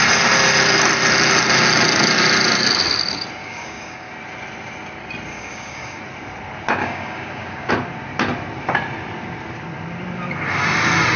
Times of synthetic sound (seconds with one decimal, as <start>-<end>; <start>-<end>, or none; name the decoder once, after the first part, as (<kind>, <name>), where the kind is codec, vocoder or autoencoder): 3.4-4.1 (codec, DAC); 5.3-6.0; 6.8-7.7